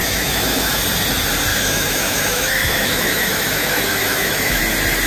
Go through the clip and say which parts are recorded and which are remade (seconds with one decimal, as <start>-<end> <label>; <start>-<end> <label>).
0.0-0.8 remade; 0.8-1.5 recorded; 1.5-4.6 remade; 4.6-5.1 recorded